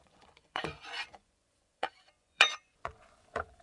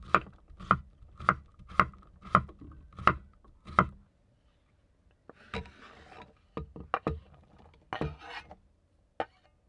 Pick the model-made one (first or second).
first